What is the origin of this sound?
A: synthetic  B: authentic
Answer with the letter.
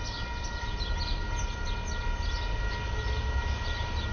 B